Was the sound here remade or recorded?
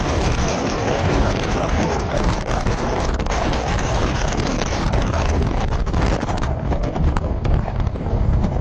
remade